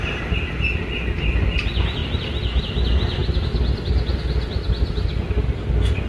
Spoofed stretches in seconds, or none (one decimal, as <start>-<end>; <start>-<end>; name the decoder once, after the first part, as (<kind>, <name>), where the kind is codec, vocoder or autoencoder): none